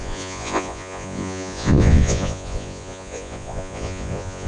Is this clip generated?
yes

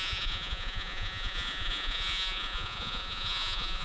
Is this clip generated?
yes